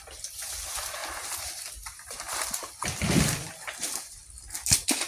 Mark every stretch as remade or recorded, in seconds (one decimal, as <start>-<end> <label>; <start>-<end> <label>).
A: 0.0-5.1 recorded

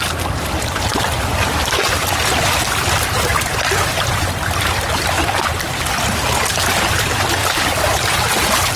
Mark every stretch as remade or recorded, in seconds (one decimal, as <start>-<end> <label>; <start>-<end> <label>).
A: 0.0-0.9 recorded; 0.9-5.7 remade; 5.7-7.4 recorded; 7.4-8.8 remade

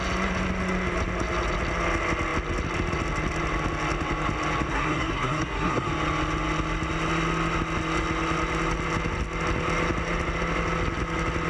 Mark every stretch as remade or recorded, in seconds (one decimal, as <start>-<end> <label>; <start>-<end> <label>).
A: 0.0-4.7 recorded; 4.7-5.9 remade; 5.9-11.5 recorded

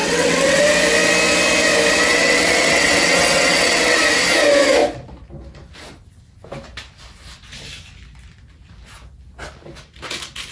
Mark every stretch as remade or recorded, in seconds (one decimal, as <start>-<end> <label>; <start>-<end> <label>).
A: 0.0-0.6 remade; 0.6-2.1 recorded; 2.1-4.0 remade; 4.0-10.5 recorded

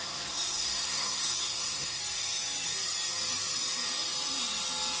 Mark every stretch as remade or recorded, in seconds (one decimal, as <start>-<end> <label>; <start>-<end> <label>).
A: 0.0-2.0 remade; 2.0-5.0 recorded

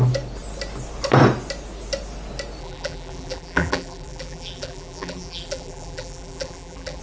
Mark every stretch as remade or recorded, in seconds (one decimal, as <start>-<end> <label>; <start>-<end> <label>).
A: 0.0-2.6 recorded; 2.6-7.0 remade

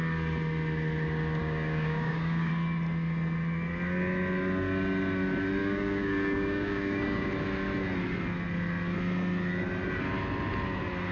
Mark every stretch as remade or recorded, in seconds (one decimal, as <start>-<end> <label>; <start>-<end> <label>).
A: 0.0-1.4 recorded; 1.4-2.5 remade; 2.5-5.6 recorded; 5.6-7.3 remade; 7.3-11.1 recorded

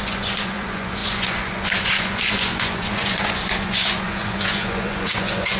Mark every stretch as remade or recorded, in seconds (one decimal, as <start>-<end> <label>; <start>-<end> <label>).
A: 0.0-5.6 remade